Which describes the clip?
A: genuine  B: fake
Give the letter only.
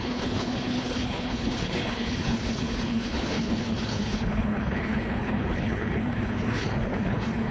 B